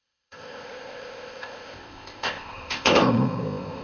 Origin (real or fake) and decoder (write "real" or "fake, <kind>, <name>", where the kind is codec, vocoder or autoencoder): fake, codec, ZipCodec